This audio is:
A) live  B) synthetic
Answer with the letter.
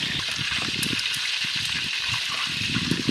B